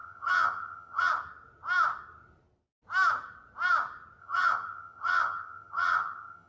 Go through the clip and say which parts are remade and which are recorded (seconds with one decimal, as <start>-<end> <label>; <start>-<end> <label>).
0.0-1.1 remade; 1.1-4.2 recorded; 4.2-6.5 remade